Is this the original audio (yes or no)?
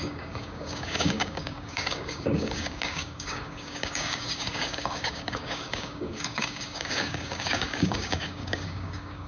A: no